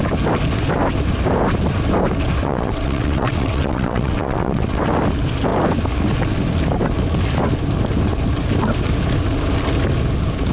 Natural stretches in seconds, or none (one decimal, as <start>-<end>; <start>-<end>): 0.0-2.4; 4.8-10.5